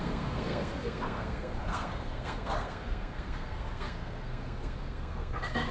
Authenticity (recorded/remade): remade